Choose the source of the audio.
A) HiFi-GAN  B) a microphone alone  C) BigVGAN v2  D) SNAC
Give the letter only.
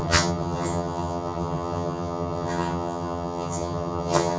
A